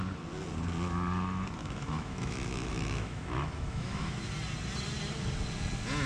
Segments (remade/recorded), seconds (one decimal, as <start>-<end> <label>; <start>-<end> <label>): 0.0-1.6 recorded; 1.6-4.3 remade; 4.3-6.1 recorded